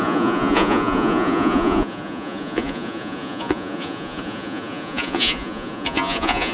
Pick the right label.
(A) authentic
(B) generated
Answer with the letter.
B